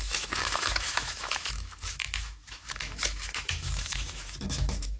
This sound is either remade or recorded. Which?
remade